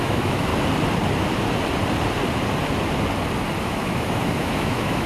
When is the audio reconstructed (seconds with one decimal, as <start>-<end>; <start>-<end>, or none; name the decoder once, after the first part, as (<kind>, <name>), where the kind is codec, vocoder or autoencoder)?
0.0-0.5 (autoencoder, DAC-VAE); 3.6-5.1